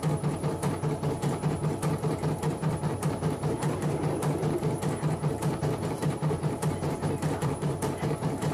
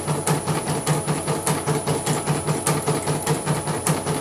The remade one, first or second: first